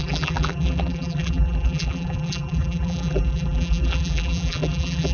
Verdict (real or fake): fake